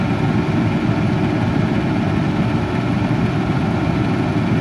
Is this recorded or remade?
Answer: recorded